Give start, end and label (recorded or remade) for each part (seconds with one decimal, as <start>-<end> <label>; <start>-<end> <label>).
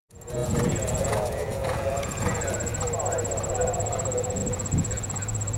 0.0-2.7 remade; 2.7-3.5 recorded; 3.5-5.6 remade